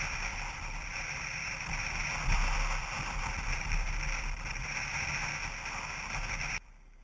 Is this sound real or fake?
fake